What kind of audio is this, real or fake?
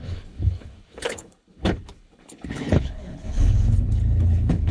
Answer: fake